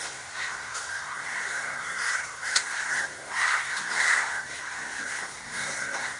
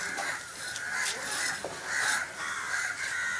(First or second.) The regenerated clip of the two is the first